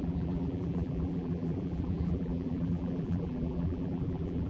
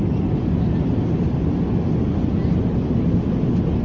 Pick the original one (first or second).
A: second